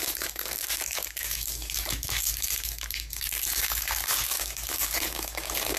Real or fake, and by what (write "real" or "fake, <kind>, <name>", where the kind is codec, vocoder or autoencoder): fake, codec, DAC